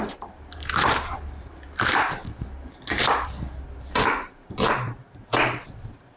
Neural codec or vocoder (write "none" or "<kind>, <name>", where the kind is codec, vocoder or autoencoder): vocoder, BigVGAN v2